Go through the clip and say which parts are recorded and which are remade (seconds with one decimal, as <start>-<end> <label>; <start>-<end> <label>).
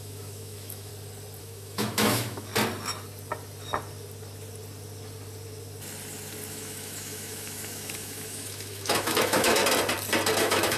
0.0-0.9 remade; 0.9-1.4 recorded; 1.4-2.5 remade; 2.5-6.5 recorded; 6.5-9.6 remade; 9.6-10.4 recorded; 10.4-10.8 remade